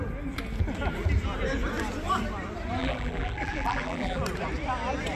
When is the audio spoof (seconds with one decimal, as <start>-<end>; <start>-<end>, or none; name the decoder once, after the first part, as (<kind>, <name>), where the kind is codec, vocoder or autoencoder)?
2.8-4.2 (vocoder, BigVGAN v2)